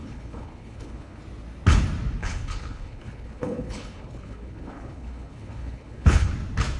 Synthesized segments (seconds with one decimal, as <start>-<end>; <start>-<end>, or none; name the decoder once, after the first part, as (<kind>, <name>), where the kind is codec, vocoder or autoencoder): 0.0-1.2 (codec, HILCodec); 2.2-6.3